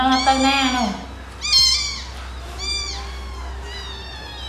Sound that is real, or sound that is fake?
real